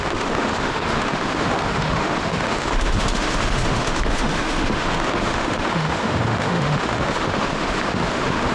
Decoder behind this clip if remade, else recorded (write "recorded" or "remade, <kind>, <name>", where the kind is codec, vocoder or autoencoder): remade, autoencoder, DAC-VAE